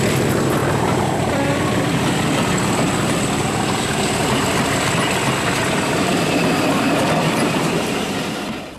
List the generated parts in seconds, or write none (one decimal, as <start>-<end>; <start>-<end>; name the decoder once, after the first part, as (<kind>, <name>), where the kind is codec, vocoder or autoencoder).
0.0-8.8 (vocoder, BigVGAN v2)